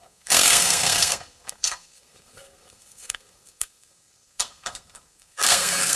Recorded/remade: remade